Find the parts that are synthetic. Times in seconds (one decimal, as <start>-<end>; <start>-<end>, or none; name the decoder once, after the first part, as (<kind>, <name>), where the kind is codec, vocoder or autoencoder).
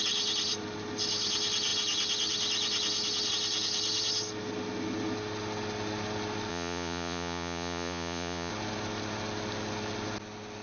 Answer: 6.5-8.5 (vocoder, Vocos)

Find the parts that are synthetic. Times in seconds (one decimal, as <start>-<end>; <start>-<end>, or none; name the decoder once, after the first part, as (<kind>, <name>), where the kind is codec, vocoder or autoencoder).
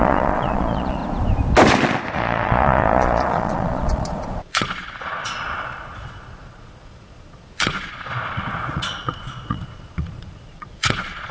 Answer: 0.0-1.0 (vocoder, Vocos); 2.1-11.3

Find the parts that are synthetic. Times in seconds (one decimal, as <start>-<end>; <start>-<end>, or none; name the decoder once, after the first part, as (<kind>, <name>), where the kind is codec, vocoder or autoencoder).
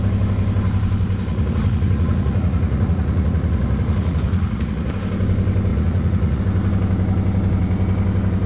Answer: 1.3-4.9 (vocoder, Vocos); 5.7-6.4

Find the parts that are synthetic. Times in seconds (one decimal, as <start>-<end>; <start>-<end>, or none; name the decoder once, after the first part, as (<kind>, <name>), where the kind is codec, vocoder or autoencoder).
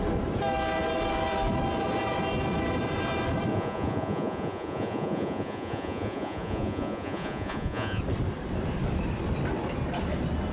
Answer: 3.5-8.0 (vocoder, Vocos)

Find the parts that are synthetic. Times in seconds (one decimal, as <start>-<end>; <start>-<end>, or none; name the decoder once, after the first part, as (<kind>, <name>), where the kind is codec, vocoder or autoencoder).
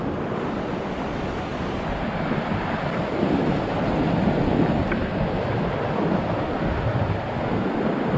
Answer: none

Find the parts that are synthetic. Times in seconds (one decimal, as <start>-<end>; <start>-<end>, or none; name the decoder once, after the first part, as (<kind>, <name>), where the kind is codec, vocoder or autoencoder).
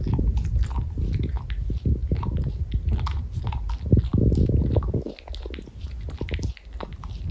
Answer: none